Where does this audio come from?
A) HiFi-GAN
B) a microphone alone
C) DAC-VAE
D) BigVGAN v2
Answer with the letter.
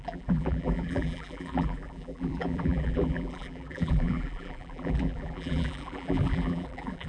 D